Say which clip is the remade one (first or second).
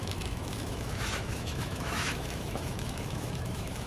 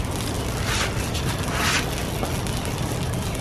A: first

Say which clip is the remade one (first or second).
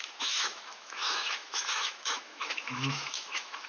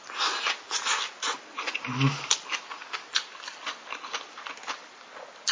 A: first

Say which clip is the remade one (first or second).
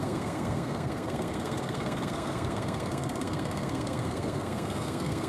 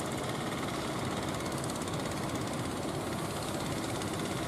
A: first